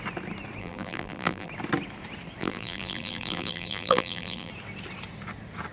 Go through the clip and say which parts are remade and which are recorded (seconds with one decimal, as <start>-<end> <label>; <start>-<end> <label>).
0.0-0.6 recorded; 0.6-1.5 remade; 1.5-2.4 recorded; 2.4-4.5 remade; 4.5-5.7 recorded